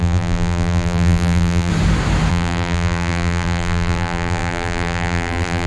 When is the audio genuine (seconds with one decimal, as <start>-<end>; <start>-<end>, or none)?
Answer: 1.7-2.3